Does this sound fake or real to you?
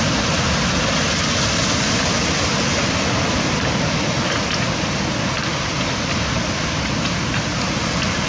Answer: real